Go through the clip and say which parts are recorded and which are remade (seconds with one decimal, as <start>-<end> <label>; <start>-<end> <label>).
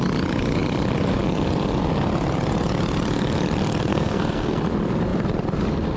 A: 0.0-3.9 recorded; 3.9-4.6 remade; 4.6-6.0 recorded